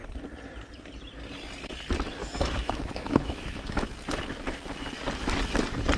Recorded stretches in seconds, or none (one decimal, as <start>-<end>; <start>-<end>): 0.0-2.2; 3.9-6.0